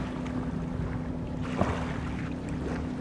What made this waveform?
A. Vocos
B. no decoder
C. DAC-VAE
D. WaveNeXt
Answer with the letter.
B